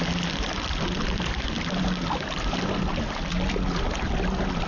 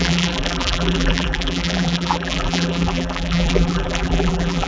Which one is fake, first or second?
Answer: second